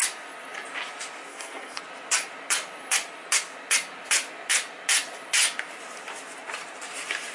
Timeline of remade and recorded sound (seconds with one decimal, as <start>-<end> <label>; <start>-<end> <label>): 0.0-1.3 recorded; 1.3-1.8 remade; 1.8-7.3 recorded